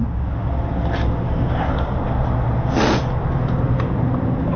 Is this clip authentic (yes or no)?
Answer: yes